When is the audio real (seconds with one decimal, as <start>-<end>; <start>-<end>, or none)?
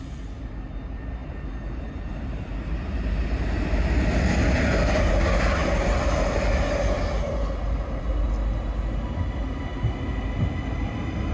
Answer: 0.0-11.3